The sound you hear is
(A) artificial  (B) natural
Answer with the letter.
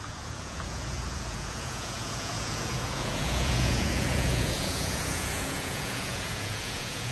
A